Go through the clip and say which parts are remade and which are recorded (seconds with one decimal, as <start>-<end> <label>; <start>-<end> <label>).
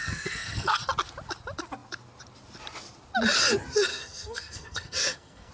0.0-0.8 remade; 0.8-3.9 recorded; 3.9-5.5 remade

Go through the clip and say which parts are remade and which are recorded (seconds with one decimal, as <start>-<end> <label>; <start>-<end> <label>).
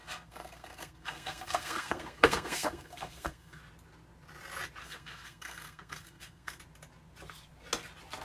0.0-3.6 remade; 3.6-4.8 recorded; 4.8-6.6 remade; 6.6-8.2 recorded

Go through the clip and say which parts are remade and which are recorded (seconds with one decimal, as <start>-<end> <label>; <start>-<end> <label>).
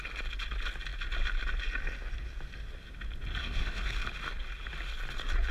0.0-3.4 recorded; 3.4-4.1 remade; 4.1-5.5 recorded